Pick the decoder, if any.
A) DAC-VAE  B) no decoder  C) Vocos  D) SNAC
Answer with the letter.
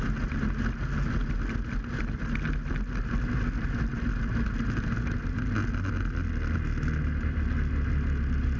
B